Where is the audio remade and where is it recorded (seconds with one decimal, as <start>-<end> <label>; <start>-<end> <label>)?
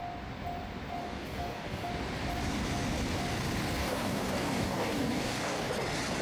0.0-1.0 recorded; 1.0-1.9 remade; 1.9-3.8 recorded; 3.8-5.7 remade; 5.7-6.2 recorded